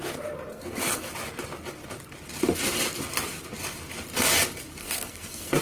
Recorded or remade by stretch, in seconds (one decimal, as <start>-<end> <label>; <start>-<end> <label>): 0.0-0.5 recorded; 0.5-1.1 remade; 1.1-4.8 recorded; 4.8-5.6 remade